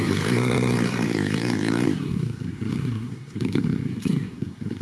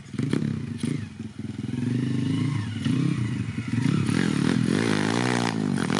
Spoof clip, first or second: first